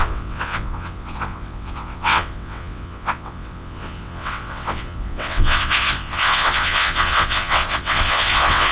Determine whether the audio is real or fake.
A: fake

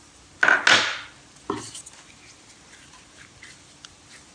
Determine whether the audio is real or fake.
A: real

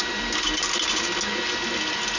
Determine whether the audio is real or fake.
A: real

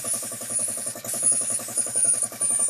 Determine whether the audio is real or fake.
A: fake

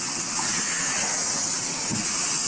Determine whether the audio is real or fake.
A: fake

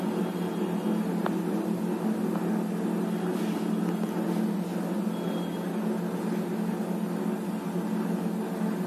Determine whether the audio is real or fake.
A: real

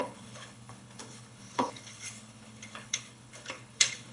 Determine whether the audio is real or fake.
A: fake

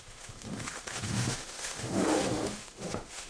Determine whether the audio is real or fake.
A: fake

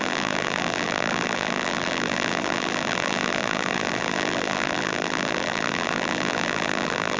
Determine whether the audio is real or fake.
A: fake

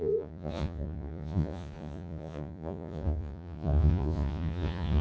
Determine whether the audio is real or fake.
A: fake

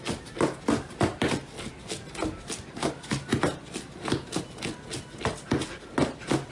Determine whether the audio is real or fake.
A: real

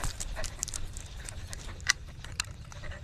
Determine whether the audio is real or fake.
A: fake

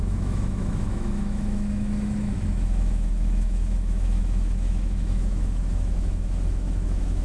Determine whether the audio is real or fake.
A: fake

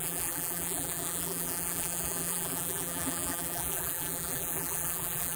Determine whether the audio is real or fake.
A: fake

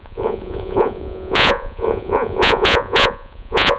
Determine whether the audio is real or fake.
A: fake